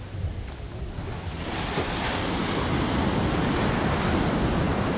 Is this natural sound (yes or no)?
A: yes